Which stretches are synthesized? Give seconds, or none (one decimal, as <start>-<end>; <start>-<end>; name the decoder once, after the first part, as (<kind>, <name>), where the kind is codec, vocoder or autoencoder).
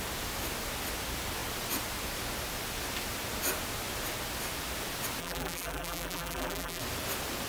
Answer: 5.2-6.8 (vocoder, BigVGAN v2)